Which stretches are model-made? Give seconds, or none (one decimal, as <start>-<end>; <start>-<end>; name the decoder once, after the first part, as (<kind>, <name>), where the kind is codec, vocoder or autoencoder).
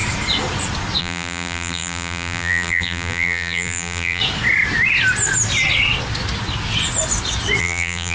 1.0-4.2 (vocoder, BigVGAN v2); 7.6-8.1